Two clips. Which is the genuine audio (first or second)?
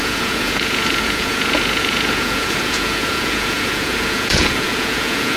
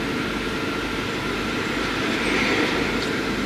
second